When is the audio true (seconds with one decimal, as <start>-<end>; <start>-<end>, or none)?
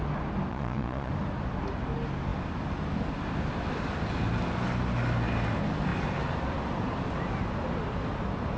0.0-0.5; 1.1-8.6